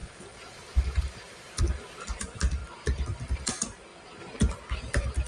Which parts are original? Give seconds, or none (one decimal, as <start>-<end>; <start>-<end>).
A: 2.6-3.4